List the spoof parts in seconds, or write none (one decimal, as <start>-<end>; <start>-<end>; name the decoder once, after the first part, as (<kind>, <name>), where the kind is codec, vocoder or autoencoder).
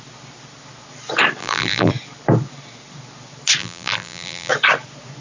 1.4-1.9 (vocoder, BigVGAN v2); 3.6-4.5